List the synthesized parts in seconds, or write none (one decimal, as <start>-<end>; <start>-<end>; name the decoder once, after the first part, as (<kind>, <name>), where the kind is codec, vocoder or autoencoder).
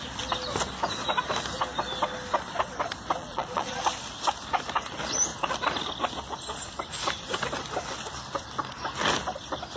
3.2-3.8 (vocoder, Vocos)